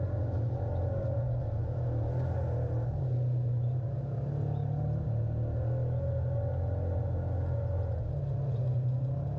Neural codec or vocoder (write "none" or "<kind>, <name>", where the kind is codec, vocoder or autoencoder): none